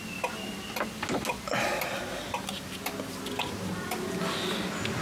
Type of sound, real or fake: real